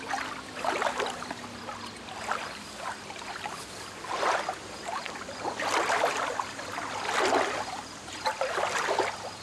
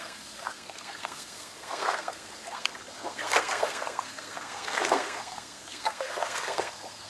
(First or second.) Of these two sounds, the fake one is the second